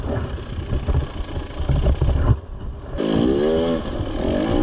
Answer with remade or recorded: recorded